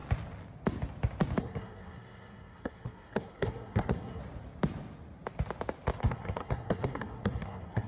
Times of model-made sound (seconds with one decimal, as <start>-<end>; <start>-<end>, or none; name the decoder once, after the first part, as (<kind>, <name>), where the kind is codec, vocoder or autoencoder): 1.4-4.2 (codec, SNAC); 6.0-7.9